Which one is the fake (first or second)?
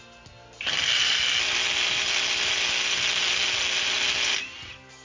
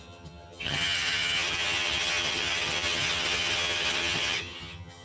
second